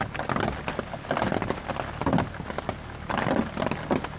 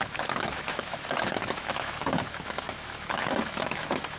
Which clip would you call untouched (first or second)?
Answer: first